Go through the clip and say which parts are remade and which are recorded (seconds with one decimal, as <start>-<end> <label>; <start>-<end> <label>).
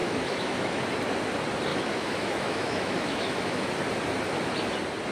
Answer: 0.0-0.8 remade; 0.8-1.7 recorded; 1.7-3.7 remade; 3.7-5.1 recorded